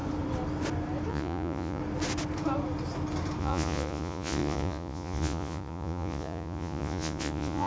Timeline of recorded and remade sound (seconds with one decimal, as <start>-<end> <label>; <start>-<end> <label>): 0.0-1.1 recorded; 1.1-1.8 remade; 1.8-3.4 recorded; 3.4-7.7 remade